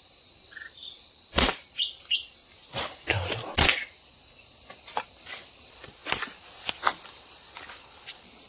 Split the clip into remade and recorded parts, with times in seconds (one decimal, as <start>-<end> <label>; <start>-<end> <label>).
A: 0.0-2.4 remade; 2.4-4.8 recorded; 4.8-6.0 remade; 6.0-7.1 recorded; 7.1-8.5 remade